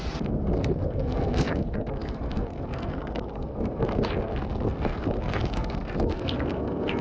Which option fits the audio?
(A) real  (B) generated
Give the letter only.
B